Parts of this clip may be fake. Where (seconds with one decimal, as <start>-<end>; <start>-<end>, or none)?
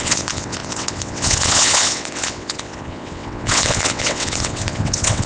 0.0-5.3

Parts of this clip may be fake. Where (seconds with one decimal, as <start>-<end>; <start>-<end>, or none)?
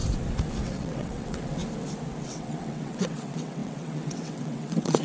0.5-1.6; 2.2-5.0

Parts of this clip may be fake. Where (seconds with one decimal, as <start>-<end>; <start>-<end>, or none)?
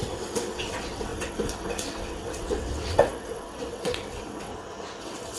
0.0-4.5; 5.0-5.4